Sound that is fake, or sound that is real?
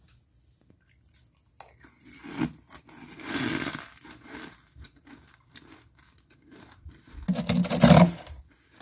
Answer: real